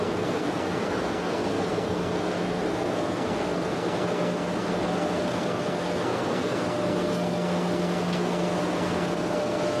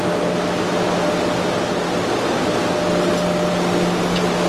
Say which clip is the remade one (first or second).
first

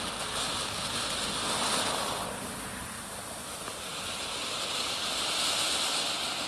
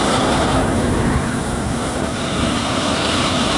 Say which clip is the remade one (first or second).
second